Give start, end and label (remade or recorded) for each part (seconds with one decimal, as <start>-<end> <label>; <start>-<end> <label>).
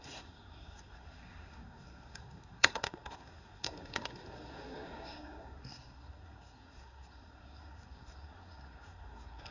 0.0-9.5 remade